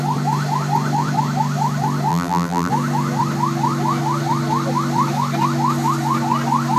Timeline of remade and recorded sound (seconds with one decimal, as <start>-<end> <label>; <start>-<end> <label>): 0.0-2.1 recorded; 2.1-2.7 remade; 2.7-6.8 recorded

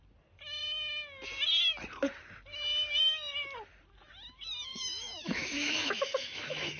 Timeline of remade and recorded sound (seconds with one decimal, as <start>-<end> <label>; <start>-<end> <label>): 0.0-4.7 recorded; 4.7-6.8 remade